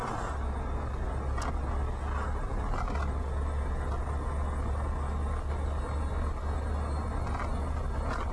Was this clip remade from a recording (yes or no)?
no